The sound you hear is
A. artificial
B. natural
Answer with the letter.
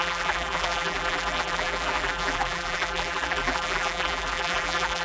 A